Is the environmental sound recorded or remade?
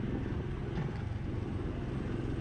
recorded